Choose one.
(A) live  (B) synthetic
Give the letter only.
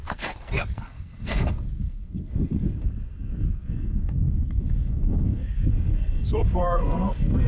B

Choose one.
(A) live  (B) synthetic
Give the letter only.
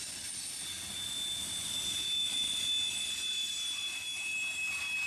A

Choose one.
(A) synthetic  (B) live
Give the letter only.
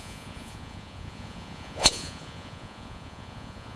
A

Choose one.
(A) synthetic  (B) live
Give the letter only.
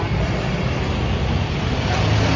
B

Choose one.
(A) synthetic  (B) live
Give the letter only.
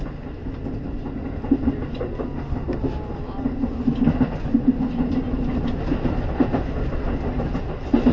B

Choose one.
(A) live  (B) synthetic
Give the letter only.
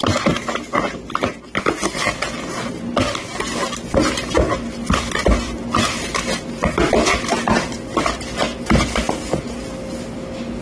A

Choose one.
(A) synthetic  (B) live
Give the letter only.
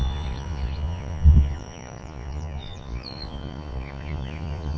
A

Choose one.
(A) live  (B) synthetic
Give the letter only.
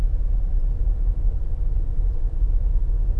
A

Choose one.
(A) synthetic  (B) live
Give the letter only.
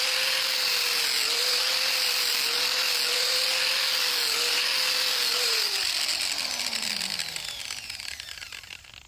B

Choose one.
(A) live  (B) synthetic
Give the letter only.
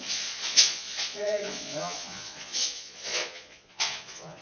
B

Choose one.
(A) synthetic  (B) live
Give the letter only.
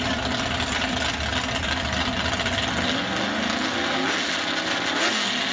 B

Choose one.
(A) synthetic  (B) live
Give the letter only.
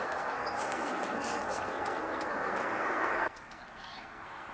A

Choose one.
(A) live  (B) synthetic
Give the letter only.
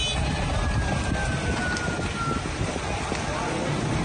A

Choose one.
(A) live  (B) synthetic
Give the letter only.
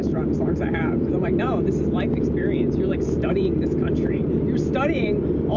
B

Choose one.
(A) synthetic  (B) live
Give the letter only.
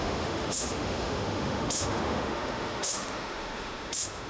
A